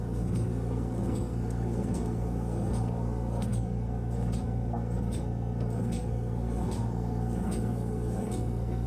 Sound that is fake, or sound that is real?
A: fake